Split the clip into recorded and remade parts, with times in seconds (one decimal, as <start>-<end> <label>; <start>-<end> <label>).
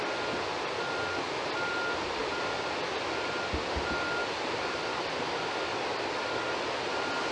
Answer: 0.0-7.3 recorded